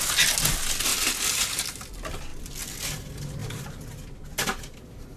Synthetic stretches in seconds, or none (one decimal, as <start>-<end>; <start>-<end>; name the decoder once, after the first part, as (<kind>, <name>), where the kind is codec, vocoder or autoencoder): 2.3-2.9 (vocoder, BigVGAN v2); 3.4-4.2